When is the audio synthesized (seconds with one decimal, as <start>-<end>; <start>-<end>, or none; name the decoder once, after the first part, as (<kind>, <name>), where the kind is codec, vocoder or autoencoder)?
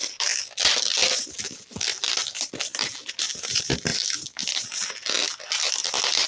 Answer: none